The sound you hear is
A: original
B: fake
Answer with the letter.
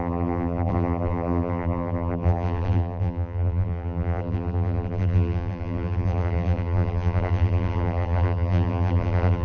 B